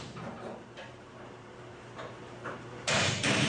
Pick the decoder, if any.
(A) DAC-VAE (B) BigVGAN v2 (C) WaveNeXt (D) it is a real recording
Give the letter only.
B